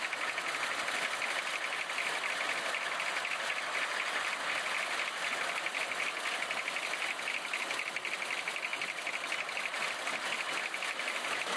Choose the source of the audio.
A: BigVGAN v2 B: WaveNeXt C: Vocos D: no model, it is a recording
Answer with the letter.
D